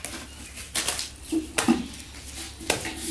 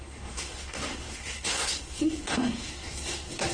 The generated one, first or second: second